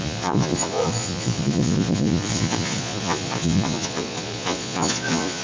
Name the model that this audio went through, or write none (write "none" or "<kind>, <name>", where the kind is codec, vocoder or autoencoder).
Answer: vocoder, Vocos